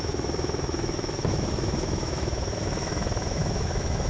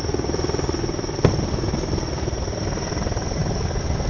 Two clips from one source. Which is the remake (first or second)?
first